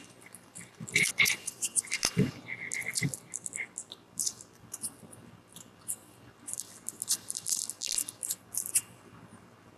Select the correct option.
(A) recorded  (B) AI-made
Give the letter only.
A